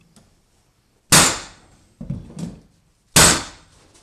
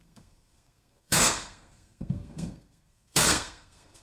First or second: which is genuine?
first